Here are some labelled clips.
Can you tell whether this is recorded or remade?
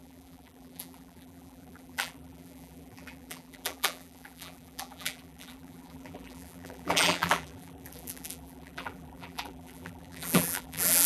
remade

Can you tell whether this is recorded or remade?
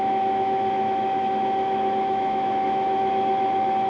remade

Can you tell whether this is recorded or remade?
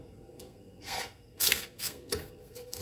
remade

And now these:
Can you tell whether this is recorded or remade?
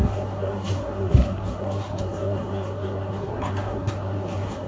remade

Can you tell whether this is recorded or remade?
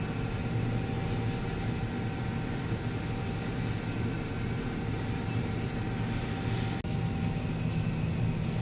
recorded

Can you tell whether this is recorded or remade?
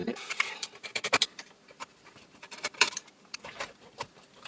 remade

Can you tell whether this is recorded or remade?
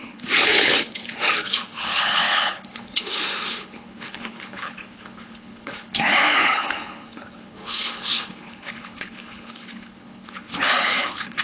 remade